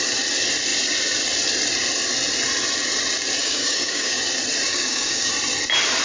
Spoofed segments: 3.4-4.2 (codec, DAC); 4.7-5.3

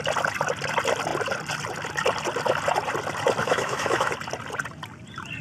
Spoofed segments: 3.4-4.1 (autoencoder, DAC-VAE)

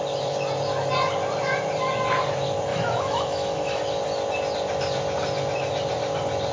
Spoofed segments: 2.7-3.8 (autoencoder, DAC-VAE)

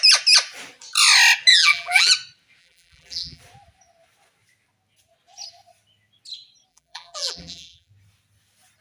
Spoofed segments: 1.5-2.1 (vocoder, BigVGAN v2); 2.6-3.4; 6.7-7.9